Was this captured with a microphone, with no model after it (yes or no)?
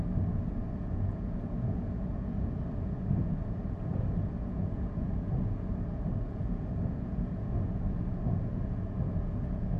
no